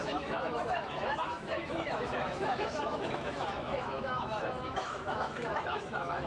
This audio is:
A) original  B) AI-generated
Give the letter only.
B